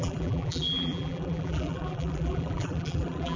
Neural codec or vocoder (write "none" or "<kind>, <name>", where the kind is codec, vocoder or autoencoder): vocoder, BigVGAN v2